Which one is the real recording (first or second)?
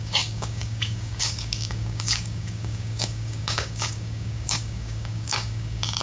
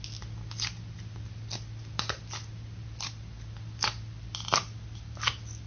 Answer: second